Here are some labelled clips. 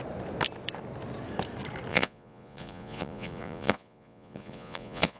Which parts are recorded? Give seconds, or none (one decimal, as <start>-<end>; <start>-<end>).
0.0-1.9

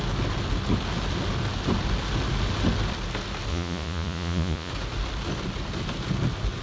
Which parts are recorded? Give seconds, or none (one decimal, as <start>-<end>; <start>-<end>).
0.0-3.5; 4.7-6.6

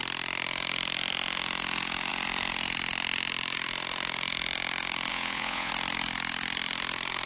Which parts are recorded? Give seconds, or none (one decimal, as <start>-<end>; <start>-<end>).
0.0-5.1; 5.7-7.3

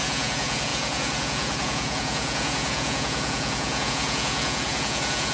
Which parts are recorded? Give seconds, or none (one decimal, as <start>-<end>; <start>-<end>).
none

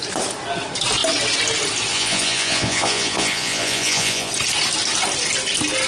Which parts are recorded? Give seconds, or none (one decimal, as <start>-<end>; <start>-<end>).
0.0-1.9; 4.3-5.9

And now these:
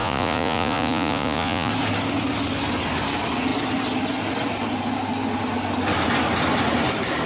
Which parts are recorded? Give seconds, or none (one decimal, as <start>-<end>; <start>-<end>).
1.7-7.3

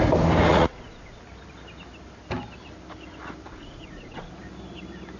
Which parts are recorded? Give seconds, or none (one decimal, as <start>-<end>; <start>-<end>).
0.0-0.5; 1.2-3.5; 4.3-5.2

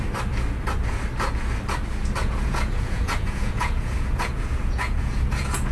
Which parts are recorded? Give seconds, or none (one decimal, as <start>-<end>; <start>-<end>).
0.0-2.2